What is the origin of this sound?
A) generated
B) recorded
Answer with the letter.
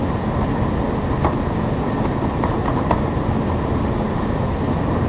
B